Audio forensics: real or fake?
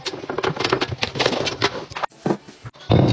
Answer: real